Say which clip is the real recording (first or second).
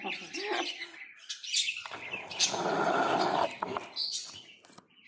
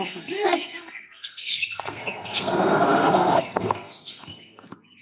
first